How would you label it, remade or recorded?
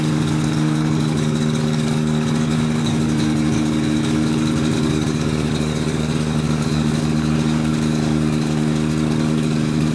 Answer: remade